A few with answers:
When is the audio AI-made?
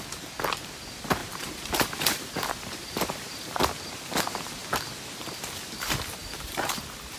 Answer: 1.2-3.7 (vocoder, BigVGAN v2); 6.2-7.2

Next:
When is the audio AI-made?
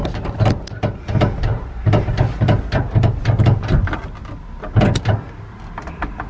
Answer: 1.5-2.2 (vocoder, BigVGAN v2)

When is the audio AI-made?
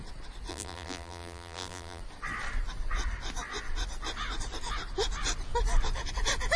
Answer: 0.5-2.0 (vocoder, BigVGAN v2)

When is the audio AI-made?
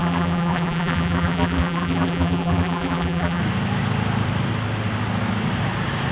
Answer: 0.0-3.4 (vocoder, BigVGAN v2)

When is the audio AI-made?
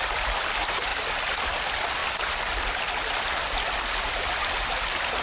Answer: 0.0-0.9 (vocoder, BigVGAN v2); 1.4-2.0; 4.1-5.2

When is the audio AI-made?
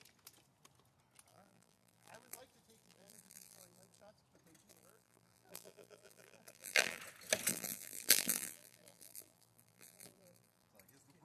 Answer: 1.3-2.4 (vocoder, BigVGAN v2); 2.8-4.1; 4.7-7.0; 7.5-10.7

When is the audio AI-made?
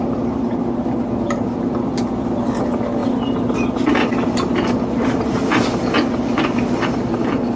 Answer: none